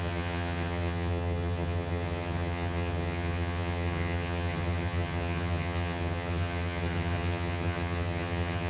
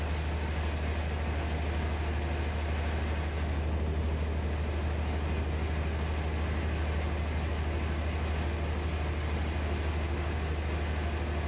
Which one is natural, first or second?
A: second